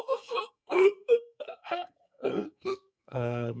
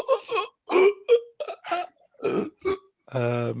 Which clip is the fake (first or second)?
first